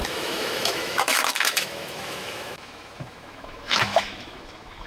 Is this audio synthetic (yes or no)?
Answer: yes